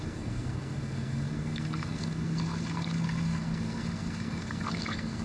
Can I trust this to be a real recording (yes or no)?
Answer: no